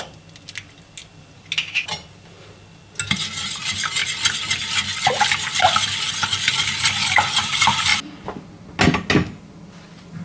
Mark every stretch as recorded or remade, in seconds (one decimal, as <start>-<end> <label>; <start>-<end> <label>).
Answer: 0.0-10.2 recorded